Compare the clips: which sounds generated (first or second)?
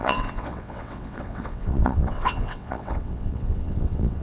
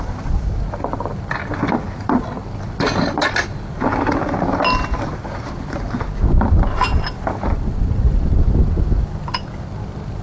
first